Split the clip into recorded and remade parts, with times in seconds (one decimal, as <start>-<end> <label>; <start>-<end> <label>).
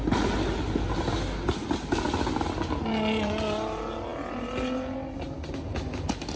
0.0-6.4 recorded